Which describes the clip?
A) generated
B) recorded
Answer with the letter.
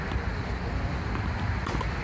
B